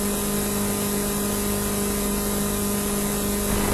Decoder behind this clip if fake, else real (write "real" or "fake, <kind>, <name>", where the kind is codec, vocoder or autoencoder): real